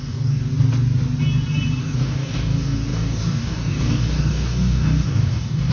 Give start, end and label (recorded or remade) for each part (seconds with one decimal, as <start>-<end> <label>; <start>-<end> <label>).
0.0-0.5 remade; 0.5-1.8 recorded; 1.8-5.7 remade